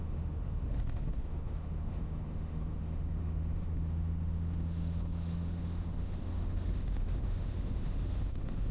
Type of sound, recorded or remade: remade